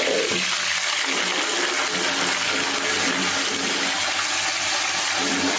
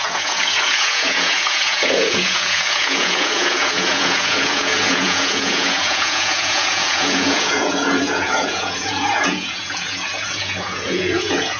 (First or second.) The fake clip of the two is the second